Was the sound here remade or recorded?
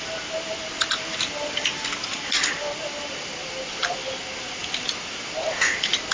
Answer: recorded